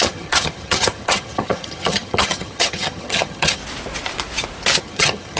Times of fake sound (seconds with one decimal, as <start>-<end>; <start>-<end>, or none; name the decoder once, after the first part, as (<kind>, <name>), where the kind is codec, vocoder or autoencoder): 0.0-3.6 (vocoder, HiFi-GAN); 4.8-5.4